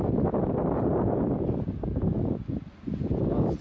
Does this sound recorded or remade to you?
recorded